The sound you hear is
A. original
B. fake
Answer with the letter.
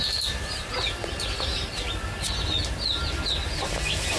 A